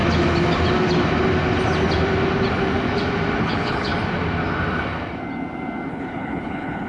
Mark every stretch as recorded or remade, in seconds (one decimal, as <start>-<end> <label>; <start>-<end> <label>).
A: 0.0-3.4 recorded; 3.4-3.9 remade; 3.9-5.9 recorded; 5.9-6.9 remade

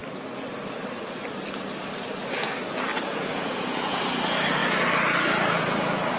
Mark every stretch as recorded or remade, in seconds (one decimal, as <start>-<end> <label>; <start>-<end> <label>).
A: 0.0-2.9 recorded; 2.9-4.0 remade; 4.0-6.2 recorded